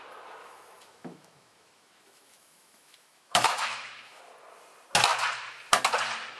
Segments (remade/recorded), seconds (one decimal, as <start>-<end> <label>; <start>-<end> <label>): 0.0-0.4 recorded; 0.4-4.2 remade; 4.2-6.4 recorded